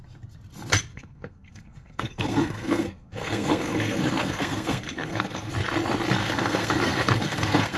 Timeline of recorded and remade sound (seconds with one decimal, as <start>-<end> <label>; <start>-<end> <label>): 0.0-0.9 recorded; 0.9-5.5 remade; 5.5-6.2 recorded; 6.2-7.8 remade